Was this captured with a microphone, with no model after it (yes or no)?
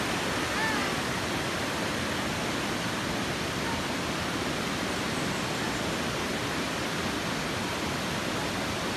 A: yes